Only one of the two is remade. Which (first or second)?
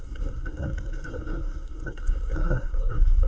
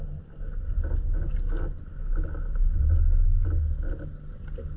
first